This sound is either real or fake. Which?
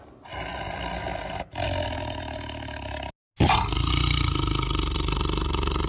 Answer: real